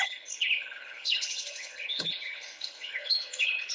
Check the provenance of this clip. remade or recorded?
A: remade